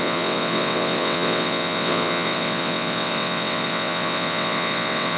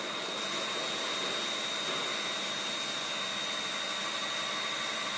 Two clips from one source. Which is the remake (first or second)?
first